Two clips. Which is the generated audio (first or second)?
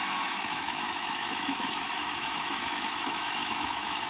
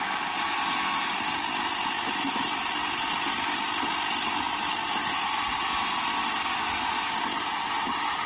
first